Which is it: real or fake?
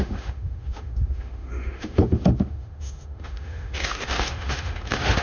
fake